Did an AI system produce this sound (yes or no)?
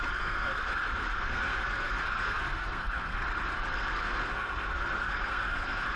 yes